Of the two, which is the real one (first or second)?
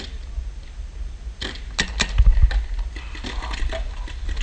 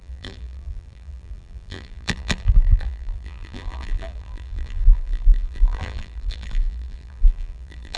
first